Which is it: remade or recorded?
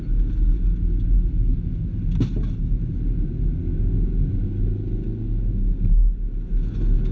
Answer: recorded